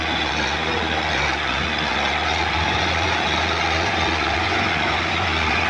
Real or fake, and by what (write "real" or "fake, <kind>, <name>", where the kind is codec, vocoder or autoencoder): fake, vocoder, Vocos